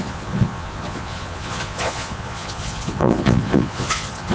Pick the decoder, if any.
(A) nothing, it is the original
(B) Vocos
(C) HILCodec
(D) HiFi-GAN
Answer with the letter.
B